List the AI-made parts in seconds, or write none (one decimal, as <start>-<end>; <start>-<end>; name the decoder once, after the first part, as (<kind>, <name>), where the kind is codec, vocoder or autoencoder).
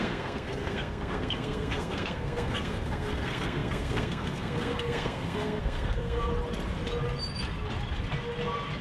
0.0-6.3 (codec, SNAC)